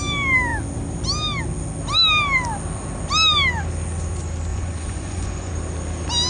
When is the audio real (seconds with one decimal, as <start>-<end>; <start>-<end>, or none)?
0.0-4.5; 5.5-6.3